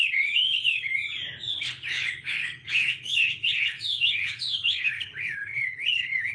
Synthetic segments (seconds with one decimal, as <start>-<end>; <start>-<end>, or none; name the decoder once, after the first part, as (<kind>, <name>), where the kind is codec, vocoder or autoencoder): 0.0-0.9 (codec, HILCodec); 1.5-6.3

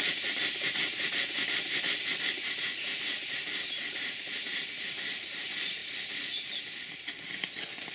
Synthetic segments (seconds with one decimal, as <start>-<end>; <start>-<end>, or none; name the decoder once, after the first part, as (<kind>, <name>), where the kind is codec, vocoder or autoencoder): 2.1-4.6 (vocoder, BigVGAN v2)

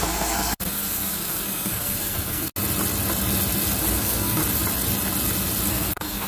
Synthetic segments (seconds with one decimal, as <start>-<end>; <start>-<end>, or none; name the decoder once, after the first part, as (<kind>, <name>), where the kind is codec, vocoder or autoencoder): 0.0-2.5 (codec, SNAC); 3.9-4.4; 5.7-6.3